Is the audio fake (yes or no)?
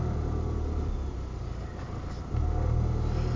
no